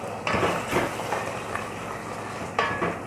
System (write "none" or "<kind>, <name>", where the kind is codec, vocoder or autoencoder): none